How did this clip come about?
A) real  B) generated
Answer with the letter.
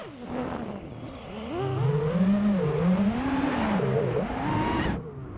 A